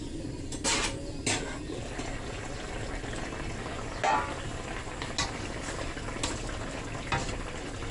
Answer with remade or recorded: recorded